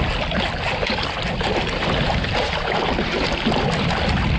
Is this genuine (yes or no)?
yes